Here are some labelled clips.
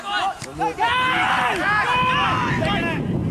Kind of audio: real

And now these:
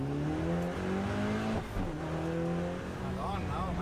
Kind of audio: real